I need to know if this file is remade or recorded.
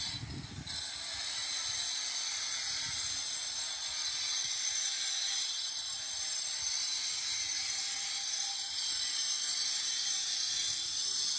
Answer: recorded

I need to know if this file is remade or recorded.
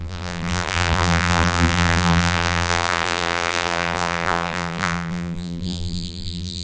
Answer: remade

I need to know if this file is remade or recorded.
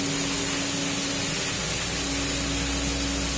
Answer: recorded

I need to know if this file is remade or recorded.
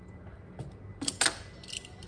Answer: recorded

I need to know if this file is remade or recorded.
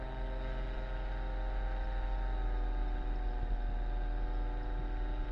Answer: recorded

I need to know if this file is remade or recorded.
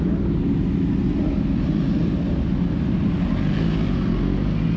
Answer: recorded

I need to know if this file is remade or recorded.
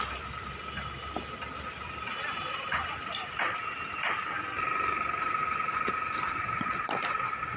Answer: remade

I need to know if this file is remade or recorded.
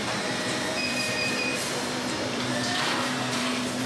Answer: remade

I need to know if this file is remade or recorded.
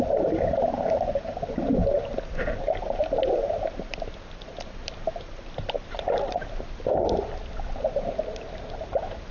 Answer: remade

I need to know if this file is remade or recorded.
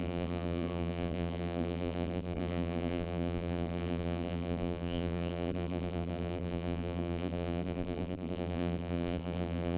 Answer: remade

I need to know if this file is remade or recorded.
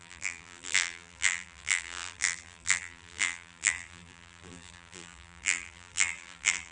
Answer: remade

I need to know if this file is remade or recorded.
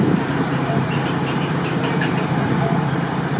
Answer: remade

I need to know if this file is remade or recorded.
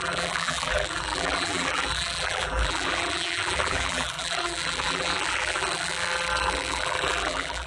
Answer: remade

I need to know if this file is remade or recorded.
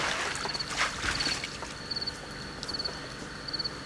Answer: recorded